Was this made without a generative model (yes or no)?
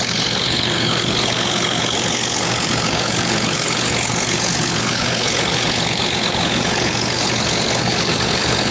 no